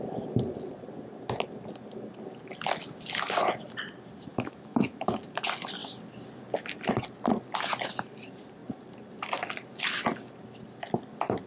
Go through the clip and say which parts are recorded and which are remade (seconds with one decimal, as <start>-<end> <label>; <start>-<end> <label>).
0.0-4.3 recorded; 4.3-5.1 remade; 5.1-11.5 recorded